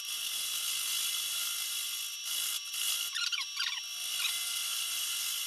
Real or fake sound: real